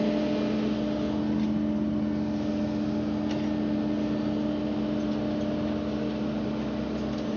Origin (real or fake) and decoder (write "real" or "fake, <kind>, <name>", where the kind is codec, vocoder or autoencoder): real